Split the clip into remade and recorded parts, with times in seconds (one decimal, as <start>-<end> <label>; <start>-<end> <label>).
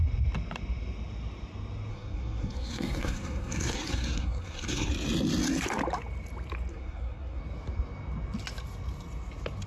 0.0-1.9 recorded; 1.9-4.9 remade; 4.9-6.7 recorded; 6.7-7.4 remade; 7.4-9.7 recorded